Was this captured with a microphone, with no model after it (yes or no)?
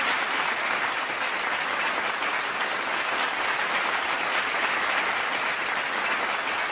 yes